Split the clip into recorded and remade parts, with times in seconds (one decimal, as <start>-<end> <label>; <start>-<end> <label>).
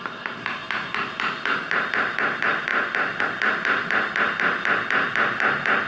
0.0-5.9 recorded